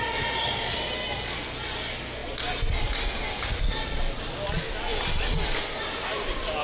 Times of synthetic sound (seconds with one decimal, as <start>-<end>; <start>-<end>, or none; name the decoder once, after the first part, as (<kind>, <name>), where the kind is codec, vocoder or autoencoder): 2.2-3.0 (vocoder, BigVGAN v2); 4.9-5.6